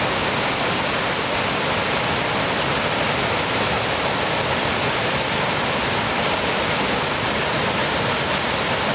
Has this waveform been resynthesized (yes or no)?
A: no